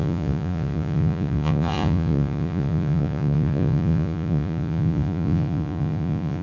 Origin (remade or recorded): remade